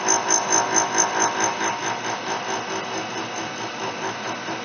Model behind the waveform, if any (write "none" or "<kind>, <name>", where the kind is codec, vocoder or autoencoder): none